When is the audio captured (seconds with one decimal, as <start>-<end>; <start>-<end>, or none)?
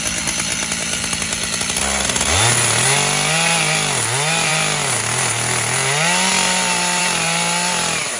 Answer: 0.0-8.2